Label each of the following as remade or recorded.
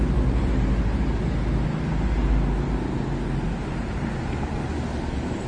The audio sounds recorded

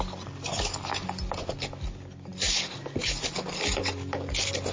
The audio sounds recorded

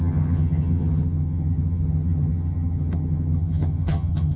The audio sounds remade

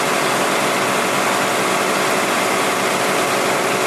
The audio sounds recorded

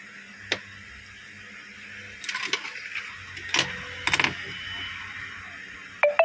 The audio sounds recorded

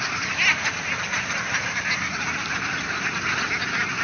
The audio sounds recorded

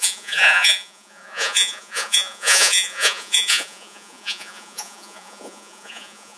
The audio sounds remade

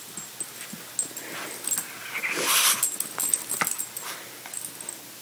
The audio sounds recorded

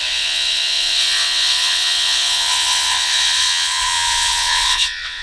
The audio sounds remade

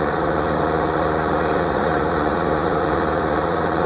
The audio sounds remade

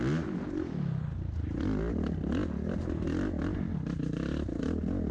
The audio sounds recorded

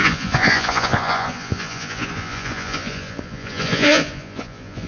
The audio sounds remade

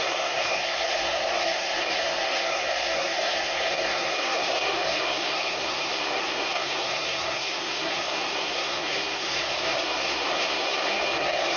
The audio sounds remade